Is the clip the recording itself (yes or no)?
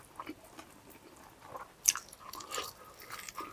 yes